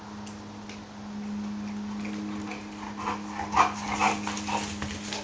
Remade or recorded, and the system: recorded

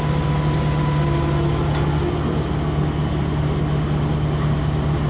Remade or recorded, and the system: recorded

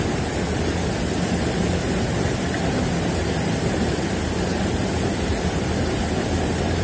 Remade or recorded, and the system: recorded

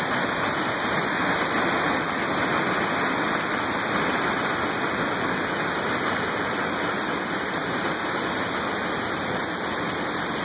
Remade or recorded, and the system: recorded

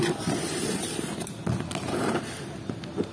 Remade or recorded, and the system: recorded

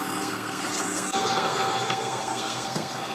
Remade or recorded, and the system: remade, codec, SNAC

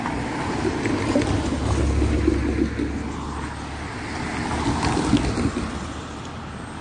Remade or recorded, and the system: recorded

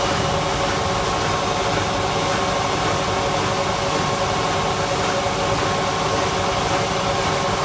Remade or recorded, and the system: recorded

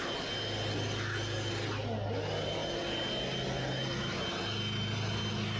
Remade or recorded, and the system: recorded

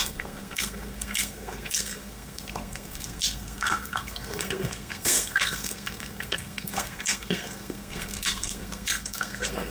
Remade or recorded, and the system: remade, codec, SNAC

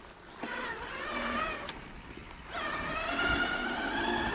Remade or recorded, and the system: recorded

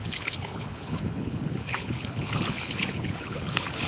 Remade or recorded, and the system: remade, codec, HILCodec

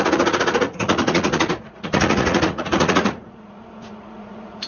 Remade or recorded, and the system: remade, vocoder, Vocos